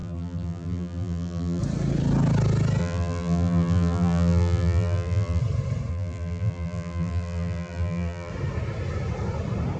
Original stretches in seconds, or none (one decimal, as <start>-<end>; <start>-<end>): 1.6-2.8; 5.4-5.9; 8.3-9.8